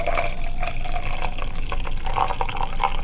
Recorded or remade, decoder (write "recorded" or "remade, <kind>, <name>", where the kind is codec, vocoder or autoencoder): recorded